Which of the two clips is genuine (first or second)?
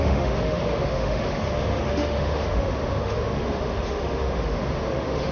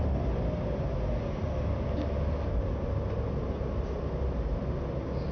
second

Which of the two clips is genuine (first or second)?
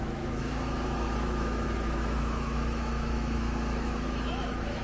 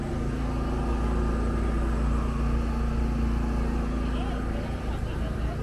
second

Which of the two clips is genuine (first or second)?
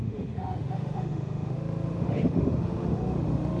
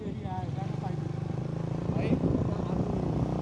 second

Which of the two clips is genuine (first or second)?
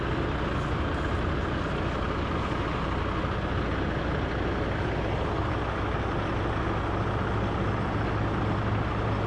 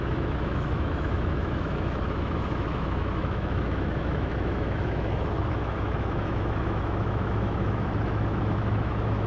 first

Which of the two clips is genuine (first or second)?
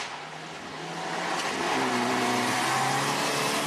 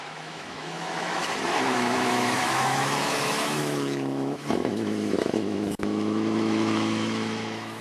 first